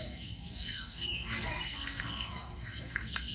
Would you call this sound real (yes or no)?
no